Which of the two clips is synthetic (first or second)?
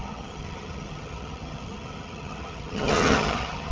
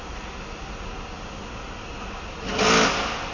first